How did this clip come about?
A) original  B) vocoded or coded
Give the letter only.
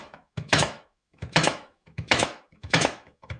B